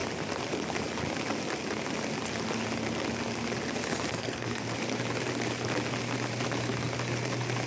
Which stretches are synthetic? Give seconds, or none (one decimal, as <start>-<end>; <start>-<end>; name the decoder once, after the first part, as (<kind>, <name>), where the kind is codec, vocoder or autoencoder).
4.1-4.6 (codec, SNAC)